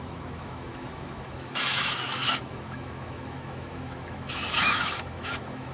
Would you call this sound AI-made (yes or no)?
yes